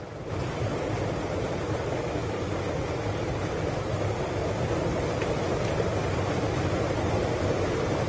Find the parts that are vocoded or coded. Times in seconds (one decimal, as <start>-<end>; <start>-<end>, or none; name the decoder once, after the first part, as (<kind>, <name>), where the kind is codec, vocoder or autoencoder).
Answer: none